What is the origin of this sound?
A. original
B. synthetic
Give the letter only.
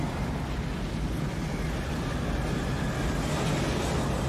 A